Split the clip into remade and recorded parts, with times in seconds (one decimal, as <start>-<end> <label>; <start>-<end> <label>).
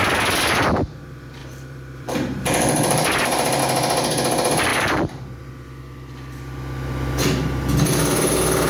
0.0-1.4 recorded; 1.4-3.6 remade; 3.6-8.7 recorded